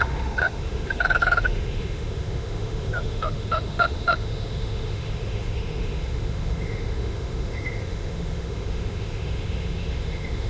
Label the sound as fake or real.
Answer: fake